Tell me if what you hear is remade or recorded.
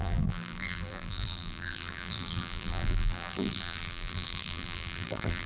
remade